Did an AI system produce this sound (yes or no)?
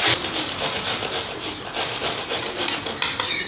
no